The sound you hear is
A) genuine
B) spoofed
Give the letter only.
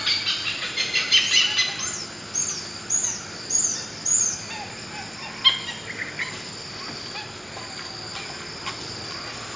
A